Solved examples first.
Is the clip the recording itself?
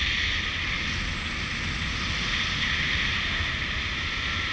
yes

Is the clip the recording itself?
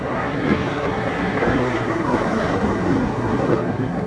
no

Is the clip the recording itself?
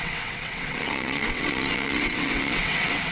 no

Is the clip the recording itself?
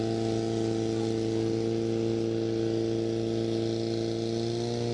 yes